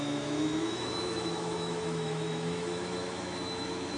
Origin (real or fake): fake